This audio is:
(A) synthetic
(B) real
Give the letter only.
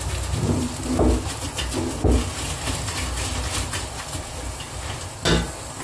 B